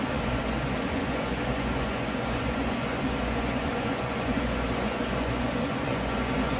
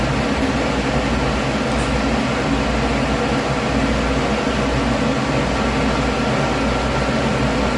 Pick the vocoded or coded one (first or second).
first